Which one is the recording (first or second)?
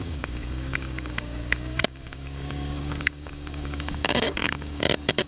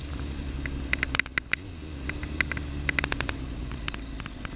second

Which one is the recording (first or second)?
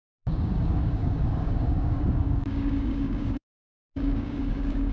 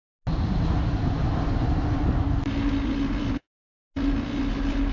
second